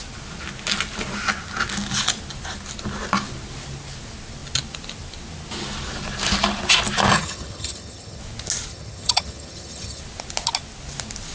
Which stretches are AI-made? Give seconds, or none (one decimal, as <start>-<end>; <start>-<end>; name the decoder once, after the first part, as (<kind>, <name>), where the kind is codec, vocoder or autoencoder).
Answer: 7.1-8.2 (vocoder, HiFi-GAN); 8.7-10.0